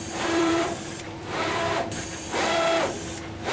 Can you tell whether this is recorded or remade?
remade